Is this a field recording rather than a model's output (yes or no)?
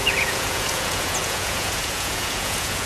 no